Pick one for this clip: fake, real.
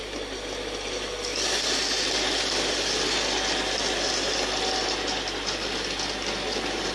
real